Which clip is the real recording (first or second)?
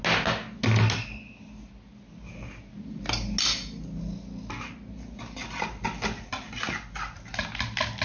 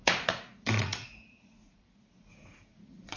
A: first